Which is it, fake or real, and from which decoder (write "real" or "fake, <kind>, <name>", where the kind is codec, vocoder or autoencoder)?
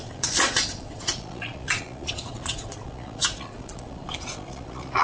fake, vocoder, Vocos